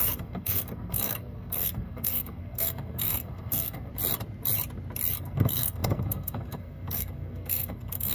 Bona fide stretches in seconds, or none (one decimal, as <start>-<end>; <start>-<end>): 3.9-5.2